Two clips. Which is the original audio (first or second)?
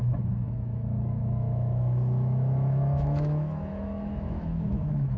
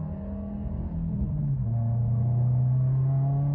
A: second